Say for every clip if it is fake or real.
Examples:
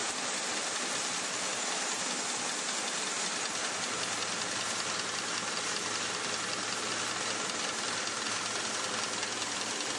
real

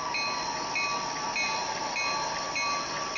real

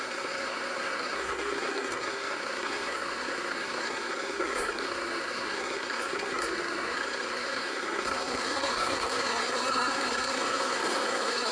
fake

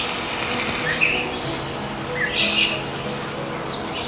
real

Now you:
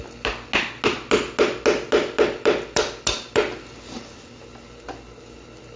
real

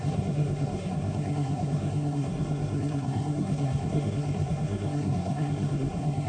fake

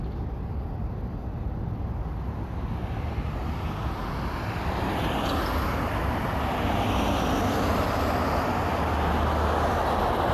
real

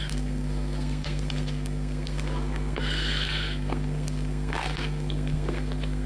fake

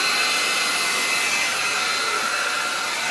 real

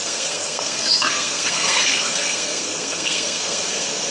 fake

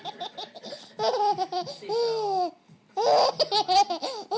real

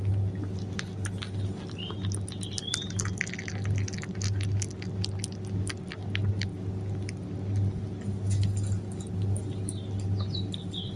real